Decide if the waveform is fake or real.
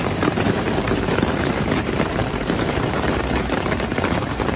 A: fake